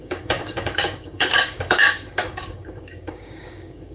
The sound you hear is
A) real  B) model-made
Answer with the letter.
B